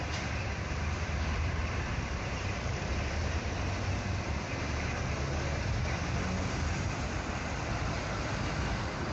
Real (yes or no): yes